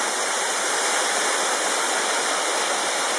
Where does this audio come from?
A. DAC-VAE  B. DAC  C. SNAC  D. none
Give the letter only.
D